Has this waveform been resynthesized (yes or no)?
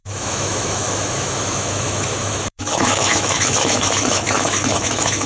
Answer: yes